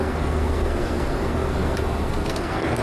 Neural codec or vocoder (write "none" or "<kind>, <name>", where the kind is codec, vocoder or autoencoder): codec, SNAC